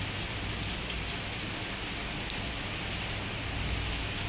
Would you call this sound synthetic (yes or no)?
no